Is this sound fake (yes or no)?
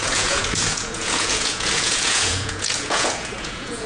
yes